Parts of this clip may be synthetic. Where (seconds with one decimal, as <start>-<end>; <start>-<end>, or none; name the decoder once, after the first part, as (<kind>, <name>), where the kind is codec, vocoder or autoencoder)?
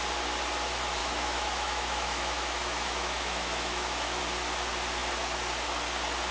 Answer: 1.0-4.2 (autoencoder, DAC-VAE)